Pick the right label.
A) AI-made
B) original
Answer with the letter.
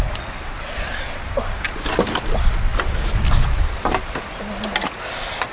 B